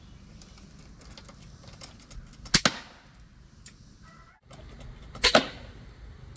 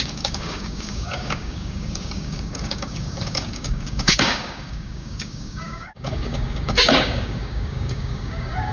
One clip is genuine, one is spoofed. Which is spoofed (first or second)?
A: second